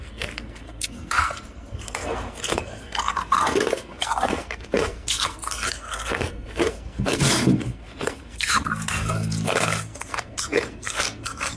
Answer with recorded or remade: remade